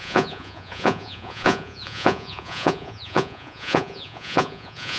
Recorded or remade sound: remade